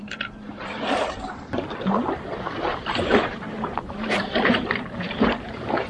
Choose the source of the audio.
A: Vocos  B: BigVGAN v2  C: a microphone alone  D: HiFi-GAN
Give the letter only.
B